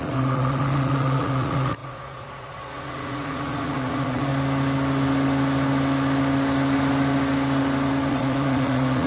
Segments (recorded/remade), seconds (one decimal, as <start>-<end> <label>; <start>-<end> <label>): 0.0-4.3 remade; 4.3-8.1 recorded; 8.1-9.1 remade